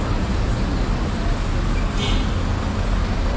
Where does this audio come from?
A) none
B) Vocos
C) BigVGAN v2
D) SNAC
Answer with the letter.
A